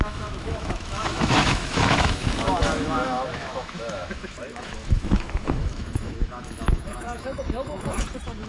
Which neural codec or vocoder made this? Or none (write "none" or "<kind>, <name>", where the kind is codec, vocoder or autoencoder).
autoencoder, DAC-VAE